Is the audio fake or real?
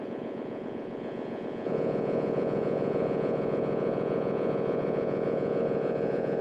fake